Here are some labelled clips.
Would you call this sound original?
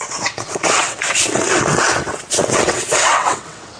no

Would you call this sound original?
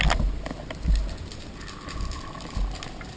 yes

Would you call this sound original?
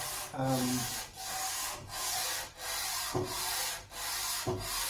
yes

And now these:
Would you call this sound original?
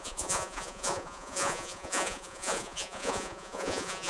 no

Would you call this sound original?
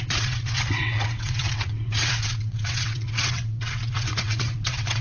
no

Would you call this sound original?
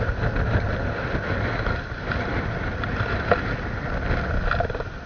yes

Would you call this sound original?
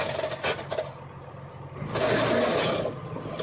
yes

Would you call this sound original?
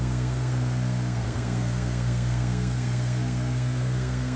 no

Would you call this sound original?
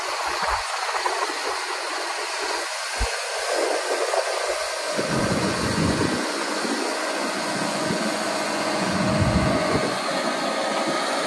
no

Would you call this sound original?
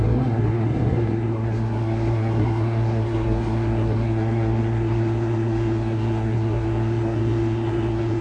no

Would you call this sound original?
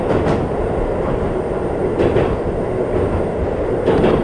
yes